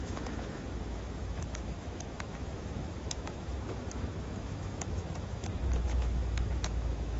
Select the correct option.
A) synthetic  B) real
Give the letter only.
A